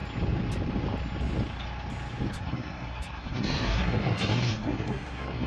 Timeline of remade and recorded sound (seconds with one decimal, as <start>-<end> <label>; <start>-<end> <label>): 0.0-2.3 recorded; 2.3-5.5 remade